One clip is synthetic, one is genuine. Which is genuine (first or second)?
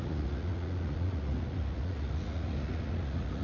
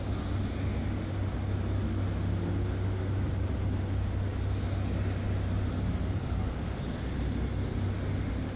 second